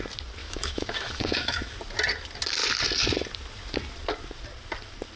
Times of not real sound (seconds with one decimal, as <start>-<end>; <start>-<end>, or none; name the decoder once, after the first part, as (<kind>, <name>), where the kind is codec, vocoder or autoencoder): 0.4-1.7 (autoencoder, DAC-VAE)